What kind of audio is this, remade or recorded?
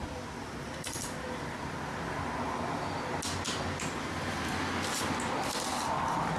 recorded